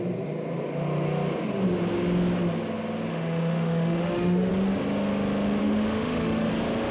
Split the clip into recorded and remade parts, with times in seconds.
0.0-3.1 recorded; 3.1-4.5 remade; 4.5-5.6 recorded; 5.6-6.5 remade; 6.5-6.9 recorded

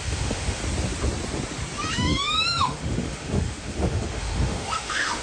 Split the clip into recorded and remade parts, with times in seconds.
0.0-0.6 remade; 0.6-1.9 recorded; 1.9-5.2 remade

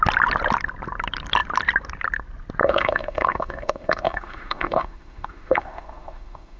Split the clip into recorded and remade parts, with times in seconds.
0.0-2.6 recorded; 2.6-6.6 remade